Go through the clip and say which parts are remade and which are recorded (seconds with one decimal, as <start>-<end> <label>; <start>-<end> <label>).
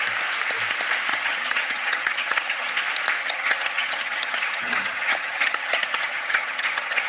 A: 0.0-1.1 recorded; 1.1-2.7 remade; 2.7-3.2 recorded; 3.2-7.1 remade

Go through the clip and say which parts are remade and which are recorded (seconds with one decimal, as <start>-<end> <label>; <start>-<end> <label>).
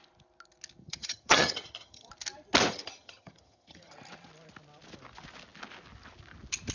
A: 0.0-0.8 recorded; 0.8-2.1 remade; 2.1-2.7 recorded; 2.7-3.9 remade; 3.9-6.7 recorded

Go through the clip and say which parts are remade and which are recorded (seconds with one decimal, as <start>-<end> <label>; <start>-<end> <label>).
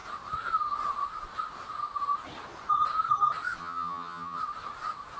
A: 0.0-3.6 recorded; 3.6-4.4 remade; 4.4-5.2 recorded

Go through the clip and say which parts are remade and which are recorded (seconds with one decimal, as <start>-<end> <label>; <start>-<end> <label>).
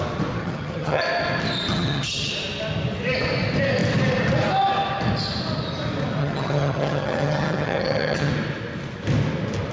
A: 0.0-0.4 recorded; 0.4-1.0 remade; 1.0-1.7 recorded; 1.7-2.3 remade; 2.3-6.2 recorded; 6.2-8.3 remade; 8.3-9.7 recorded